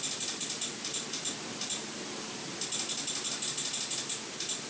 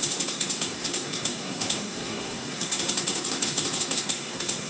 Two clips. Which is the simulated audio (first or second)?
second